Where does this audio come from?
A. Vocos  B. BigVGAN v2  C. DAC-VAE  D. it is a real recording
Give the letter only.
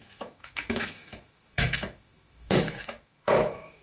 C